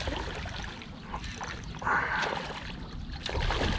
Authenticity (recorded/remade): recorded